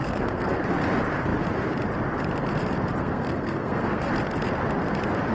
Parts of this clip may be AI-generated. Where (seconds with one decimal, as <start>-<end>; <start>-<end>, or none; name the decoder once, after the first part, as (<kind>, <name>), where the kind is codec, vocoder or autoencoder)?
0.0-0.6 (codec, SNAC); 3.0-4.1